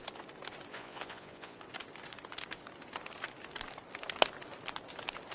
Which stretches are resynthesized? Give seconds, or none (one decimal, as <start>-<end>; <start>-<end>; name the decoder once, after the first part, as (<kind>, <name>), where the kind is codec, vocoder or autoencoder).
0.7-1.6 (vocoder, Vocos)